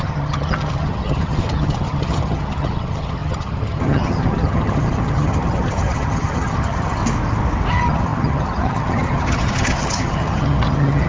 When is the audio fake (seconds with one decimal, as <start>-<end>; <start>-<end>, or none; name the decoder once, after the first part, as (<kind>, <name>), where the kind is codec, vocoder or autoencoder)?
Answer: 0.0-7.0 (vocoder, HiFi-GAN); 7.7-11.1